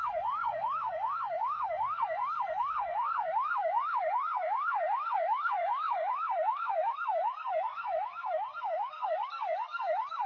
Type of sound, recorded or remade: remade